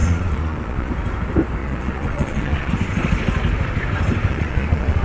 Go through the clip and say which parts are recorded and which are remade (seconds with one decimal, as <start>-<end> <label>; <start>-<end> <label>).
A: 0.0-0.9 remade; 0.9-1.6 recorded; 1.6-2.7 remade; 2.7-4.3 recorded; 4.3-5.0 remade